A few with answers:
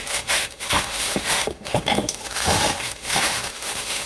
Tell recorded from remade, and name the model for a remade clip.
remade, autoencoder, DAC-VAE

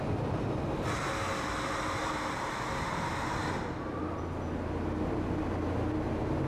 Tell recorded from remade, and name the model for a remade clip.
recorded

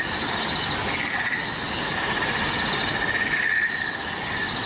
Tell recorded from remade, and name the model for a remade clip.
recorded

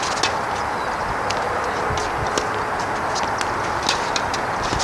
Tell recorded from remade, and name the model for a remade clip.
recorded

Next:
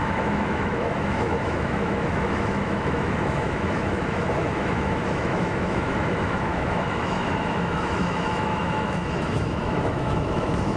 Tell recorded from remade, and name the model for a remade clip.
remade, autoencoder, DAC-VAE